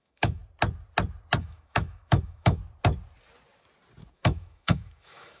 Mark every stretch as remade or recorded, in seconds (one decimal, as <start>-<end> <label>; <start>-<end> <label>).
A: 0.0-0.4 remade; 0.4-1.4 recorded; 1.4-2.6 remade; 2.6-4.1 recorded; 4.1-5.4 remade